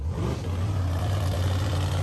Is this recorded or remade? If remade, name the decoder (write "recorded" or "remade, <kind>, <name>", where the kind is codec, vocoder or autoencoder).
remade, vocoder, BigVGAN v2